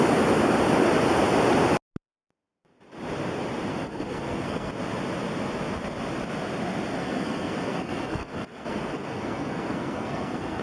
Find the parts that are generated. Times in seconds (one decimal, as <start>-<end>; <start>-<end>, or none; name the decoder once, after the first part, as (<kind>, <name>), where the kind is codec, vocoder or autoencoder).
3.7-4.7 (codec, SNAC); 7.0-10.6